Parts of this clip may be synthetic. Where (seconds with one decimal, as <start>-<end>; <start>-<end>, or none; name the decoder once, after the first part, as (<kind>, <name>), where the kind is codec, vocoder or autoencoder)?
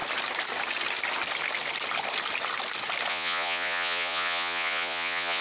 3.1-5.4 (vocoder, Vocos)